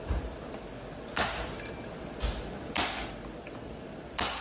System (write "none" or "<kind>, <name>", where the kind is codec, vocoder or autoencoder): none